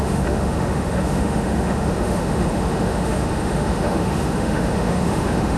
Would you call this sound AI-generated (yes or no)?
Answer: yes